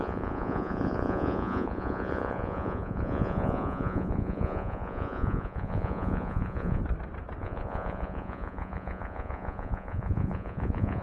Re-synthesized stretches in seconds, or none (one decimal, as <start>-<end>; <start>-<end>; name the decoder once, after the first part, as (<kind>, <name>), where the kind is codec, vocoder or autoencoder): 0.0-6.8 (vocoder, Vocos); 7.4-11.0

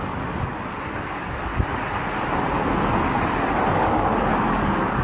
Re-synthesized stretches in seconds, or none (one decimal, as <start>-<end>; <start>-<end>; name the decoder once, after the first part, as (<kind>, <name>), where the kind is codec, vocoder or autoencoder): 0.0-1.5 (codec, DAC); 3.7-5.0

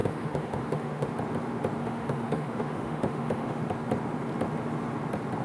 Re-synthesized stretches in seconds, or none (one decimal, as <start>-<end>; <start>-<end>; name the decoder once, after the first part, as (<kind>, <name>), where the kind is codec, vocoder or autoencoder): 0.0-1.1 (autoencoder, DAC-VAE); 1.8-3.6